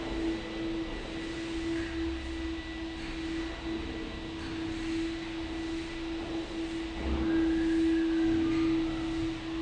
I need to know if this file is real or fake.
real